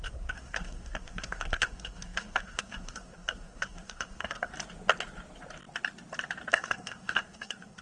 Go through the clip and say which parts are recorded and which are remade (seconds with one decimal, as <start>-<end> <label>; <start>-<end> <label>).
0.0-4.5 remade; 4.5-6.5 recorded; 6.5-7.8 remade